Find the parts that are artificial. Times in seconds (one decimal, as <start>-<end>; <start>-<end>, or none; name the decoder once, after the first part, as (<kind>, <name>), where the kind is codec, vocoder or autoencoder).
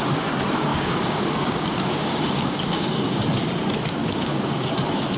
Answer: 0.7-3.2 (codec, DAC); 4.0-4.7